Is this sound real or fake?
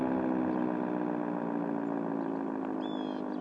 real